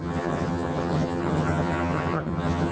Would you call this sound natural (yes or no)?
no